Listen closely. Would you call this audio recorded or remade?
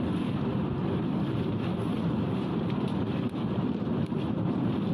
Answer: recorded